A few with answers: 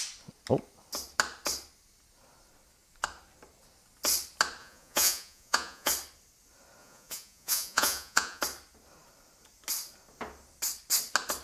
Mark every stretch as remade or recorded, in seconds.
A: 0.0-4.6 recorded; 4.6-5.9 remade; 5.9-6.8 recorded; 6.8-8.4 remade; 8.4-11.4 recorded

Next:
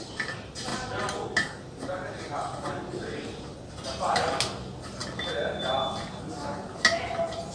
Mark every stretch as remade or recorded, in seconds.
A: 0.0-7.5 recorded

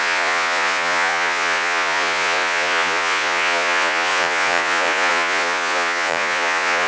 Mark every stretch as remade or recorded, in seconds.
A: 0.0-6.9 remade

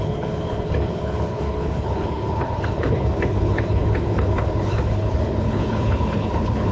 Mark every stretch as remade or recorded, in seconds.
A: 0.0-6.7 remade

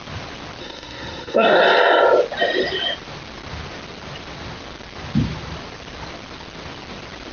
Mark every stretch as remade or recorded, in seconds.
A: 0.0-0.6 recorded; 0.6-1.6 remade; 1.6-7.3 recorded